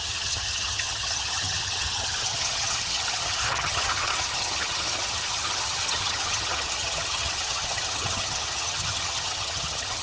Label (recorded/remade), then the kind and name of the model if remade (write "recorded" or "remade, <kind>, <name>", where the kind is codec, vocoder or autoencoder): remade, vocoder, HiFi-GAN